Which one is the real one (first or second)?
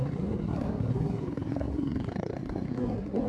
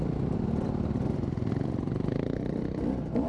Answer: second